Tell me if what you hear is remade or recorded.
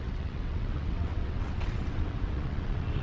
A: remade